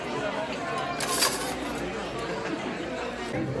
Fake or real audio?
real